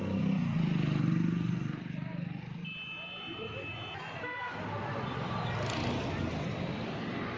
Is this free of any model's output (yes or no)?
yes